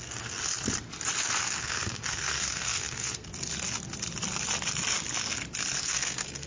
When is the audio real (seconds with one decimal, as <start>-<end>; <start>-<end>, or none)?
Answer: 0.4-1.4; 3.3-5.8